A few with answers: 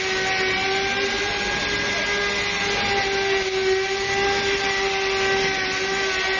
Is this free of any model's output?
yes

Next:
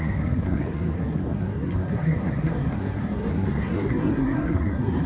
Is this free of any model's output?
no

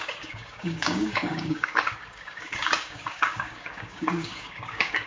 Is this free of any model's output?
no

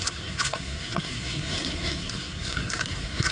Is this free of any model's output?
no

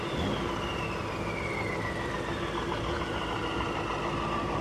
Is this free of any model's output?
yes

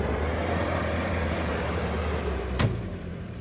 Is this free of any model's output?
no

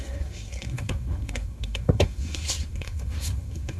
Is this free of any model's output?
no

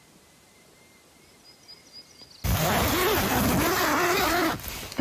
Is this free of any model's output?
yes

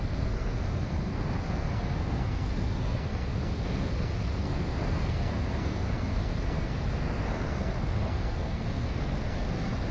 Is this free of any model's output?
no